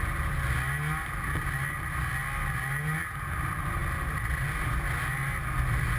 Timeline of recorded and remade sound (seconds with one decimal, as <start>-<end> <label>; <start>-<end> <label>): 0.0-6.0 recorded